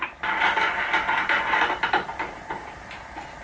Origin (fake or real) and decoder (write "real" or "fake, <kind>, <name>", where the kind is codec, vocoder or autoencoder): real